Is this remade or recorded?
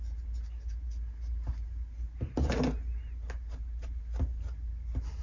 recorded